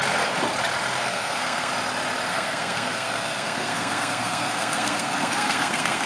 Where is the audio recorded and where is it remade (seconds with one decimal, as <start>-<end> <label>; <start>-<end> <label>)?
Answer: 0.0-1.0 recorded; 1.0-1.7 remade; 1.7-2.3 recorded; 2.3-6.1 remade